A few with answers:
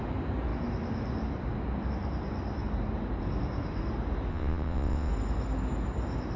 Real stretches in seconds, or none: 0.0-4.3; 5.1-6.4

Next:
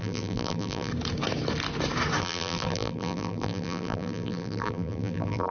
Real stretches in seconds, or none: 0.9-2.2

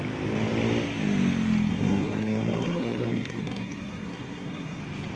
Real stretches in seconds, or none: 0.0-1.7; 4.8-5.2